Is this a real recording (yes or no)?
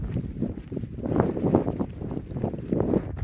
no